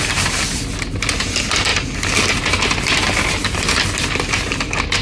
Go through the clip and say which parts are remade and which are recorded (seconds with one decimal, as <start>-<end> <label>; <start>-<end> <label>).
0.0-5.0 recorded